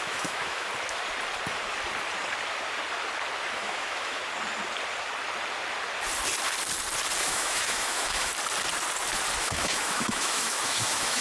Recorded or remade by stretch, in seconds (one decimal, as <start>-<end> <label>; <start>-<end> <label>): 0.0-0.7 remade; 0.7-3.5 recorded; 3.5-4.2 remade; 4.2-7.2 recorded; 7.2-8.3 remade; 8.3-9.4 recorded; 9.4-11.2 remade